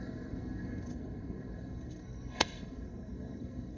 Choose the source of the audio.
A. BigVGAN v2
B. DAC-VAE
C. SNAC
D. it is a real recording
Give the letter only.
C